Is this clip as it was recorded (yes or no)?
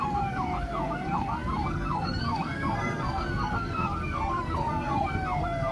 no